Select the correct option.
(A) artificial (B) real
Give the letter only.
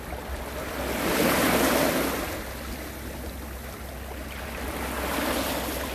B